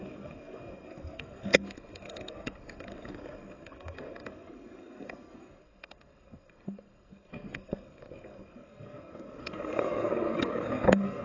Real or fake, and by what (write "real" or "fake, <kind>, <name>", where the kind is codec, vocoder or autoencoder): fake, codec, SNAC